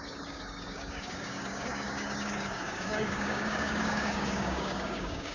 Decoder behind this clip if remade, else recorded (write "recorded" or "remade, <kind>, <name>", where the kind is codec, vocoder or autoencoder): remade, codec, DAC